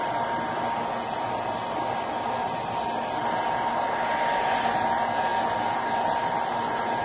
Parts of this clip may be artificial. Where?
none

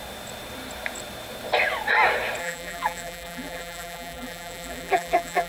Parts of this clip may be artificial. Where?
2.4-5.5 (vocoder, BigVGAN v2)

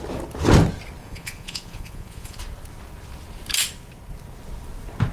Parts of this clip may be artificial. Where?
1.0-2.4 (vocoder, Vocos)

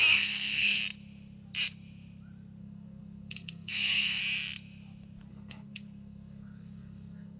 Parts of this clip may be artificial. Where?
0.0-0.8 (codec, SNAC); 2.6-4.2; 5.3-7.4

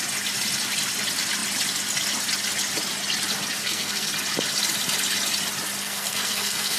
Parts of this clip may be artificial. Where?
3.6-4.1 (codec, SNAC); 5.8-6.8

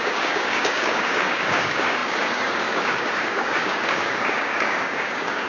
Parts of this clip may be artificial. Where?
0.0-5.5 (codec, DAC)

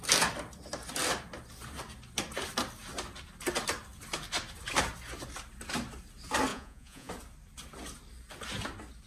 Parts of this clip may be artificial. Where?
6.5-7.1 (vocoder, Vocos)

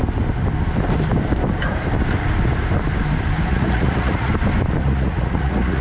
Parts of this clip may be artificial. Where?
3.5-4.3 (vocoder, Vocos); 4.8-5.8